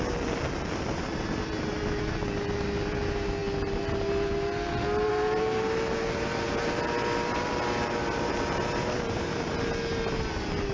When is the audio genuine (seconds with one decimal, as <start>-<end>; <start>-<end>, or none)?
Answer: 0.0-10.7